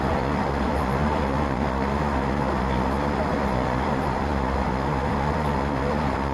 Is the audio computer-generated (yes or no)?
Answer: yes